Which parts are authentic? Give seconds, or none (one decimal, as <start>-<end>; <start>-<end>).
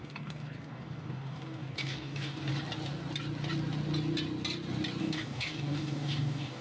2.5-5.0